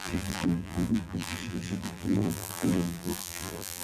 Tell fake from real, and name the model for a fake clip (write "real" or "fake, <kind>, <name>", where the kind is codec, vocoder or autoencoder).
fake, vocoder, BigVGAN v2